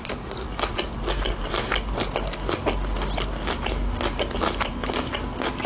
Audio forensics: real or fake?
real